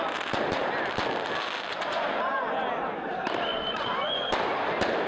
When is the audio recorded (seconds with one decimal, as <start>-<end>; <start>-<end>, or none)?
0.0-1.7; 2.3-3.5; 4.3-5.1